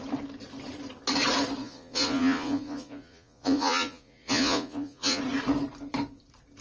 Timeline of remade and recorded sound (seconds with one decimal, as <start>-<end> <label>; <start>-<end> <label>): 0.0-1.6 recorded; 1.6-5.2 remade; 5.2-6.6 recorded